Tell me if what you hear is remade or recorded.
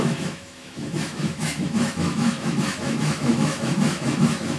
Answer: remade